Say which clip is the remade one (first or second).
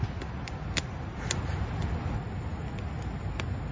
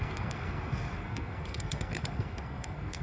second